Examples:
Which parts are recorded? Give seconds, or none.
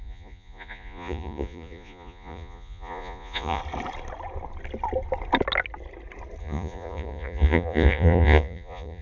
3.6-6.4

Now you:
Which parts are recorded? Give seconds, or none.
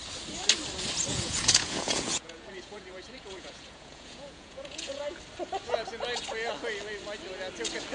0.0-1.1; 5.2-7.9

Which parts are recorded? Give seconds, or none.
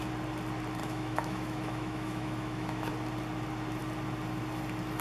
0.0-0.8; 2.9-5.0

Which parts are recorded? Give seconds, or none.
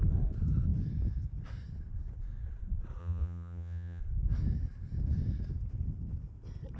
0.0-3.0; 4.0-6.8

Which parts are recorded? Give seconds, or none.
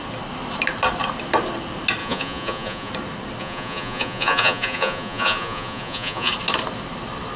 0.0-2.0; 2.9-3.4; 6.3-7.4